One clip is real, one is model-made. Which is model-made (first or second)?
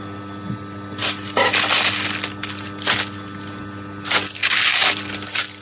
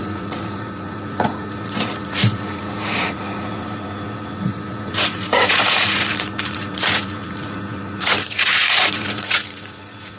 second